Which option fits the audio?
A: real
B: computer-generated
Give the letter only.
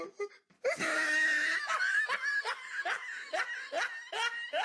A